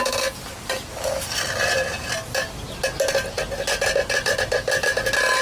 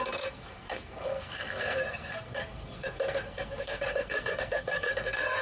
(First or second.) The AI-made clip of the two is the second